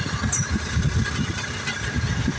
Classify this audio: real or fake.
real